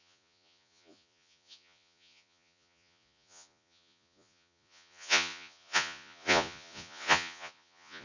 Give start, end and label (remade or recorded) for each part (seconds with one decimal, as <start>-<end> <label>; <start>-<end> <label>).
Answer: 0.0-8.0 remade

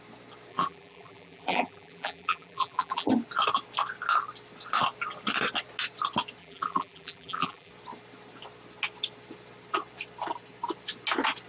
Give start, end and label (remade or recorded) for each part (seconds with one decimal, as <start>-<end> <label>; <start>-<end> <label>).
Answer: 0.0-0.5 recorded; 0.5-3.1 remade; 3.1-6.4 recorded; 6.4-7.7 remade; 7.7-11.5 recorded

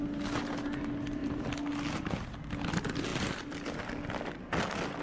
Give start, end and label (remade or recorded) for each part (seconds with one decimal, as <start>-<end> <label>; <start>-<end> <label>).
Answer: 0.0-3.1 recorded; 3.1-3.8 remade; 3.8-5.0 recorded